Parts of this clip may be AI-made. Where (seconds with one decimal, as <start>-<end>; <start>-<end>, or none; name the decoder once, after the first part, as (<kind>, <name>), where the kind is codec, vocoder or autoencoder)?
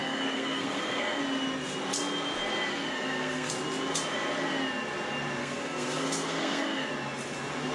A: 0.0-1.2 (codec, SNAC); 2.7-3.5; 5.4-6.9